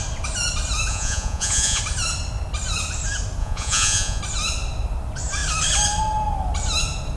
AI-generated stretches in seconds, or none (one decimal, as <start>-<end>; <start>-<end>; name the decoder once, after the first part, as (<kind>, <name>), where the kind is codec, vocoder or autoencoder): 0.9-1.8 (vocoder, Vocos); 3.4-4.2